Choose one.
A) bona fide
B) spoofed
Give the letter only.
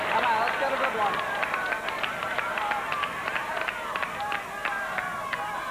A